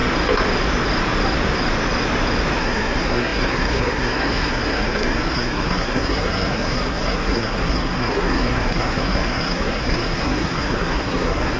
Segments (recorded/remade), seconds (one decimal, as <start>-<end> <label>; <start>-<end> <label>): 0.0-2.6 recorded; 2.6-11.6 remade